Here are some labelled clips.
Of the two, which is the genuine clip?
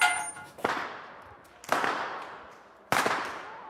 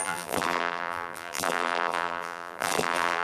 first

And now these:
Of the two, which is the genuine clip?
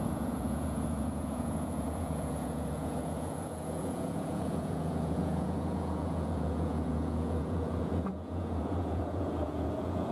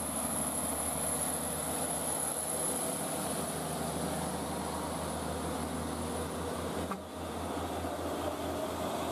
second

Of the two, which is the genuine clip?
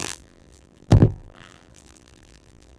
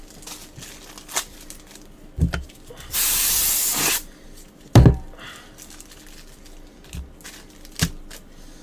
second